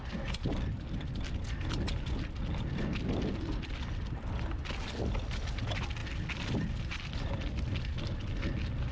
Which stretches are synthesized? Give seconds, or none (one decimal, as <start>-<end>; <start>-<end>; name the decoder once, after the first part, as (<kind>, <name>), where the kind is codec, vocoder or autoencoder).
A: none

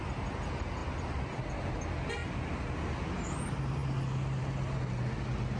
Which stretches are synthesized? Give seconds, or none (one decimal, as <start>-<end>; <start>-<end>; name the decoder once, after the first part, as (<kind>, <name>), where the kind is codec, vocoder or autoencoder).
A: none

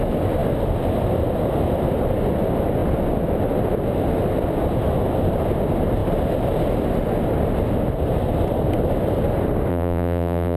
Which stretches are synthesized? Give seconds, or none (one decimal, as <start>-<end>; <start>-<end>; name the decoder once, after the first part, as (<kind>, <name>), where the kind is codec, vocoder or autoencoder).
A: 9.7-10.6 (vocoder, BigVGAN v2)